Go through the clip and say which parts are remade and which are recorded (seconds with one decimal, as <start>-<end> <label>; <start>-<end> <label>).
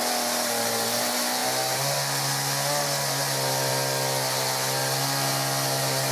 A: 0.0-6.1 recorded